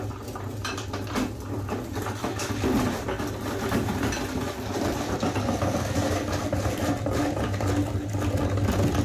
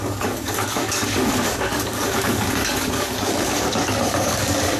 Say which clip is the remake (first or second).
second